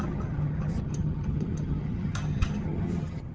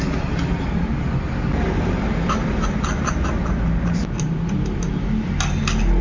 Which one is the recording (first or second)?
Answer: second